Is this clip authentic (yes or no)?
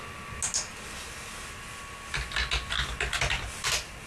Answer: yes